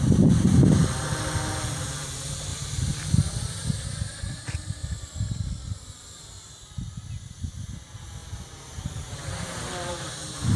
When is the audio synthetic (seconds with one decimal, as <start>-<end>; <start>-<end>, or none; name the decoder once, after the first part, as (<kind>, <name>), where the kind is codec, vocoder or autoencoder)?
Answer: 0.0-1.1 (vocoder, BigVGAN v2); 1.7-2.5; 4.2-4.8; 7.2-10.6